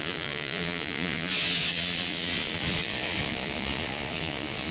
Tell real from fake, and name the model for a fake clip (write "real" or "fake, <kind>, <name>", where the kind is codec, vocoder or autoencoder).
fake, vocoder, Vocos